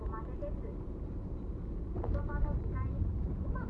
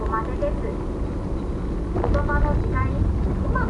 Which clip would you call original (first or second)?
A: second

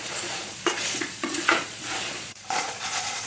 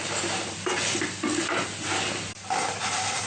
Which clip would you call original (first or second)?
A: second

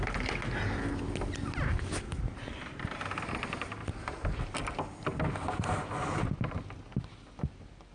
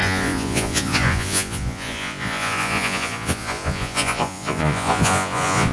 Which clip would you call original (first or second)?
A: first